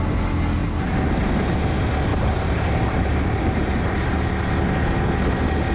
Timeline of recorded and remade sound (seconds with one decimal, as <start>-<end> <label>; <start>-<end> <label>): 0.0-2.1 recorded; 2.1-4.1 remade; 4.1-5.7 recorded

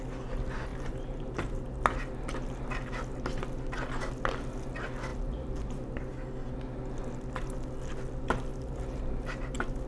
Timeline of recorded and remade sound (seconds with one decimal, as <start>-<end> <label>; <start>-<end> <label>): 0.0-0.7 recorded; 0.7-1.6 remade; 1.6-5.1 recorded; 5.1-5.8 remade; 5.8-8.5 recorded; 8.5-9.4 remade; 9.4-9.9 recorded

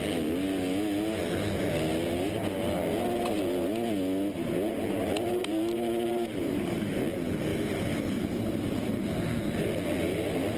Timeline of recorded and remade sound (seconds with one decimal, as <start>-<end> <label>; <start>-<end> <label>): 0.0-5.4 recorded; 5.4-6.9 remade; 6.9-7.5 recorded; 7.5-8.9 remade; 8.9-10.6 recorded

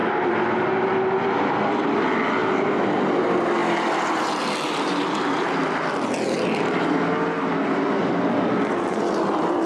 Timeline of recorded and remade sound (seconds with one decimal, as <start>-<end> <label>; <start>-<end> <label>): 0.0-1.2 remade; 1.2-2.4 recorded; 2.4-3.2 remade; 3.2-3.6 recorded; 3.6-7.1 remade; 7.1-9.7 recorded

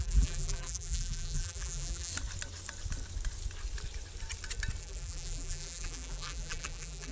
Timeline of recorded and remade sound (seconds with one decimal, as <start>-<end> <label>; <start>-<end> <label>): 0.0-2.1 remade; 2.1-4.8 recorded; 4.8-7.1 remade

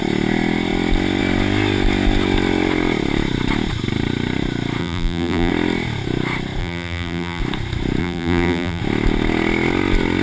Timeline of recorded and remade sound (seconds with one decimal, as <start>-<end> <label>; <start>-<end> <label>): 0.0-4.8 recorded; 4.8-5.5 remade; 5.5-6.6 recorded; 6.6-7.4 remade; 7.4-8.0 recorded; 8.0-8.8 remade; 8.8-10.2 recorded

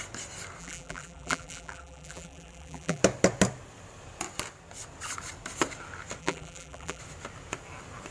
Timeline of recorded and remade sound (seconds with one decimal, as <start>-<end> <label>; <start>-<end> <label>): 0.0-0.6 recorded; 0.6-3.0 remade; 3.0-6.2 recorded; 6.2-7.0 remade; 7.0-8.1 recorded

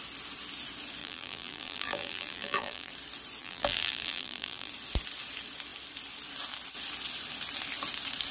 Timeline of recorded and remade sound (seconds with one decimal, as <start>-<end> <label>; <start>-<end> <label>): 0.0-1.0 recorded; 1.0-2.9 remade; 2.9-3.4 recorded; 3.4-4.7 remade; 4.7-8.3 recorded